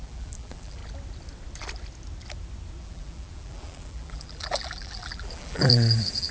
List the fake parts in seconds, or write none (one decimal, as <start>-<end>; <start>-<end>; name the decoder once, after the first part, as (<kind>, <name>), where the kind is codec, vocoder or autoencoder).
0.0-0.8 (vocoder, BigVGAN v2); 2.8-6.3